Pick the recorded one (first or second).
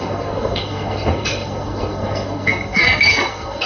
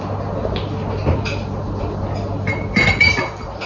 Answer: second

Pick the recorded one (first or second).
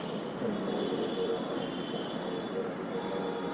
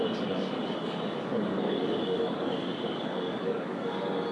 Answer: first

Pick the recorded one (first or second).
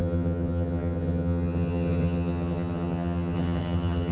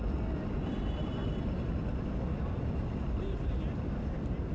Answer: second